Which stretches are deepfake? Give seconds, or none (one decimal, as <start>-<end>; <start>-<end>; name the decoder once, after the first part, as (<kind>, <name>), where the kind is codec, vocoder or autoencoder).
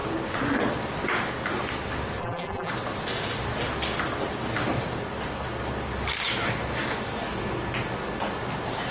2.2-2.7 (vocoder, BigVGAN v2)